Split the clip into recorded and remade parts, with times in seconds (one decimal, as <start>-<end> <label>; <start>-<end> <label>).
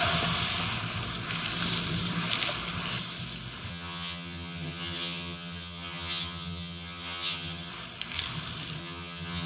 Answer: 0.0-3.7 recorded; 3.7-7.7 remade; 7.7-8.8 recorded; 8.8-9.5 remade